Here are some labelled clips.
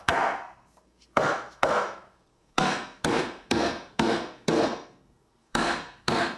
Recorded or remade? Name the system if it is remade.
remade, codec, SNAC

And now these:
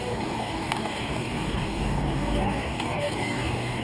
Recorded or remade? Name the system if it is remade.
remade, codec, DAC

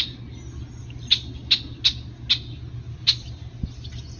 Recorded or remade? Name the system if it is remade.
recorded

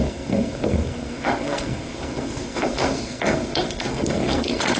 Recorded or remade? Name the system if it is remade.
remade, codec, SNAC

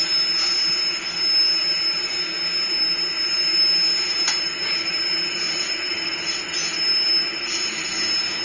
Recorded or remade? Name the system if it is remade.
recorded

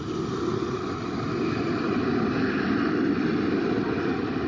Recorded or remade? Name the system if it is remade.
recorded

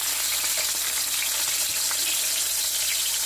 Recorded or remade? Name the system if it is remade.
recorded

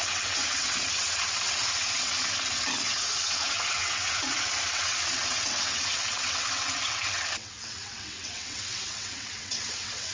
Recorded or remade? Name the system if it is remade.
remade, vocoder, WaveNeXt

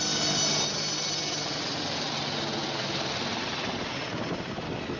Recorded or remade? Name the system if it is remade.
recorded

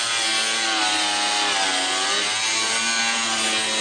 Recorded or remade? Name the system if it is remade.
recorded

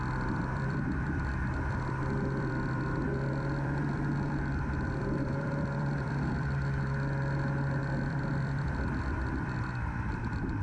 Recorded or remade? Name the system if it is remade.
remade, vocoder, BigVGAN v2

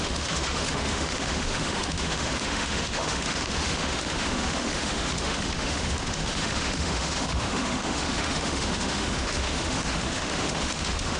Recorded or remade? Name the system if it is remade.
remade, autoencoder, DAC-VAE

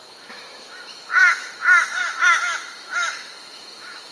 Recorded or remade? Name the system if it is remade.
remade, autoencoder, DAC-VAE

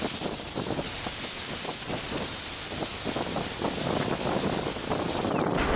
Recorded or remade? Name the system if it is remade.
recorded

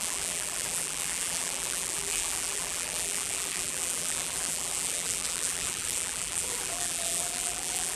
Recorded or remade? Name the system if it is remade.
remade, vocoder, BigVGAN v2